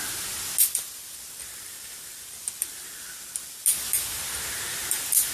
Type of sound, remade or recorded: recorded